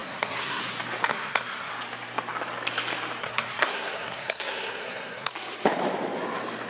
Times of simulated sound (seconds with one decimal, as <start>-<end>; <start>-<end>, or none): 0.0-0.6; 1.1-1.7; 3.2-5.3